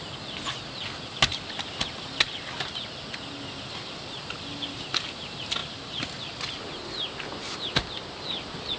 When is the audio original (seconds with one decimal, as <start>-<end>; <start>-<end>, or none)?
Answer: 0.0-8.8